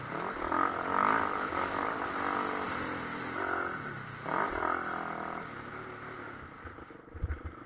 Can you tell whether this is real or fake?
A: real